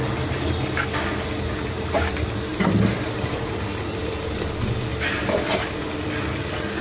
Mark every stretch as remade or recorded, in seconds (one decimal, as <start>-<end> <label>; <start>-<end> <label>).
0.0-2.5 recorded; 2.5-4.1 remade; 4.1-4.9 recorded; 4.9-5.5 remade; 5.5-6.8 recorded